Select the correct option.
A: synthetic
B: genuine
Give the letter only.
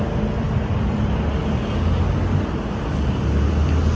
B